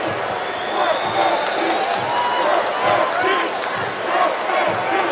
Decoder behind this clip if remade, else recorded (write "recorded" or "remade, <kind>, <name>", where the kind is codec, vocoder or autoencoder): recorded